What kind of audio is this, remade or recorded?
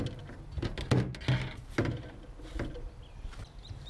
recorded